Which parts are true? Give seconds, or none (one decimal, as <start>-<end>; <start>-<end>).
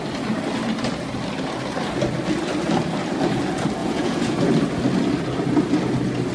0.0-3.8; 4.5-6.3